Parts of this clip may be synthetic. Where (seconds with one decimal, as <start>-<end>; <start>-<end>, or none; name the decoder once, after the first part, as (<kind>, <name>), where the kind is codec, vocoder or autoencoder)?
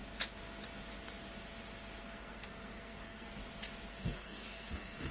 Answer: 2.0-3.4 (codec, SNAC); 3.9-5.1